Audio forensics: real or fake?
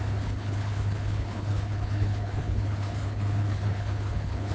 fake